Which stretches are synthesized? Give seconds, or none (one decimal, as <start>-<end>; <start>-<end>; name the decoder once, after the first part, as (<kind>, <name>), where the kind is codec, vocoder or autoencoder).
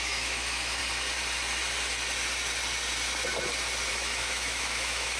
0.0-0.8 (autoencoder, DAC-VAE); 3.9-5.2